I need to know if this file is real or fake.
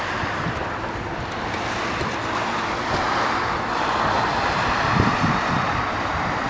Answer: fake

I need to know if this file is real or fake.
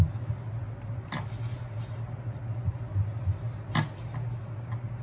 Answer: real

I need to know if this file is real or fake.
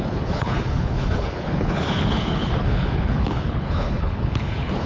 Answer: fake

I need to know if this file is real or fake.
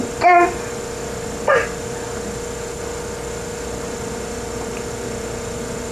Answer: real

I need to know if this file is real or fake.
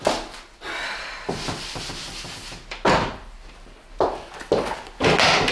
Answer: real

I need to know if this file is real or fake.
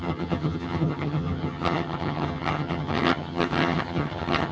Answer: fake